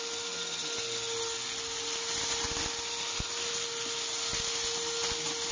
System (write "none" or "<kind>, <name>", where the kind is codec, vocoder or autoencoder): none